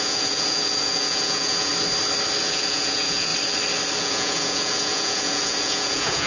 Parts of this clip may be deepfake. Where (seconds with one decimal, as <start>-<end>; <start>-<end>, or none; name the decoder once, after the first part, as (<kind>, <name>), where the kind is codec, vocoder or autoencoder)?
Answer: 0.0-1.7 (vocoder, Vocos); 2.4-3.3; 4.0-6.3